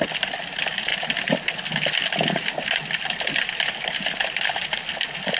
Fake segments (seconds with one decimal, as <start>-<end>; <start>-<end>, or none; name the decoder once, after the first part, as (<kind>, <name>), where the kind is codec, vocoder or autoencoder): none